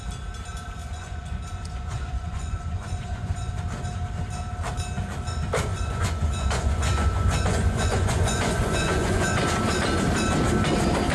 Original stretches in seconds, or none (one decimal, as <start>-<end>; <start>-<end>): 0.0-0.8; 3.5-5.7; 9.4-11.1